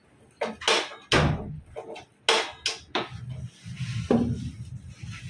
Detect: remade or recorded recorded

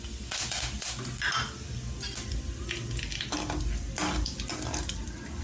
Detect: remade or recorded recorded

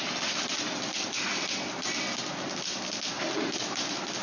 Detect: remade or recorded recorded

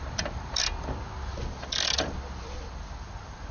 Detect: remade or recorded recorded